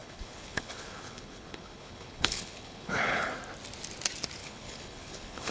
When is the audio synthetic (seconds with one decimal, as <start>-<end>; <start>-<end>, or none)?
0.0-3.3; 4.4-5.5